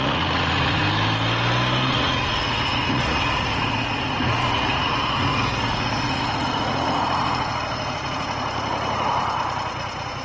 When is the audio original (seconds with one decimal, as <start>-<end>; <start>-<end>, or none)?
0.8-1.9